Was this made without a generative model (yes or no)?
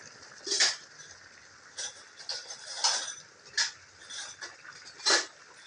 yes